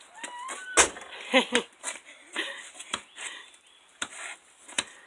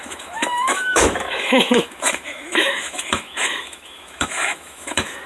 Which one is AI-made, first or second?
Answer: second